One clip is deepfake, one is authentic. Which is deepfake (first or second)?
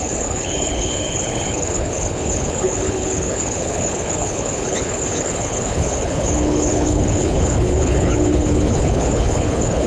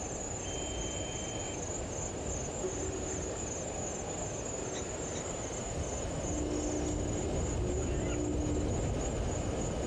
first